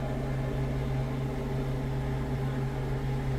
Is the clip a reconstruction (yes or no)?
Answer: no